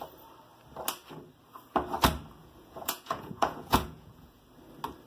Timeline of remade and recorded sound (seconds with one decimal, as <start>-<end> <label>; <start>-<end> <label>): 0.0-2.4 recorded; 2.4-4.4 remade; 4.4-5.1 recorded